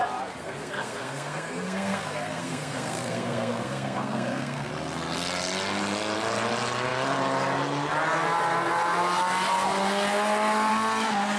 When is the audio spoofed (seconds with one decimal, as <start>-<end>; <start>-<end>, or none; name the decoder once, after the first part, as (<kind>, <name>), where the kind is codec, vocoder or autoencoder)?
0.4-4.7 (codec, SNAC)